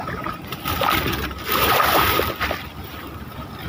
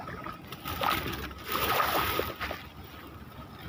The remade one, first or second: first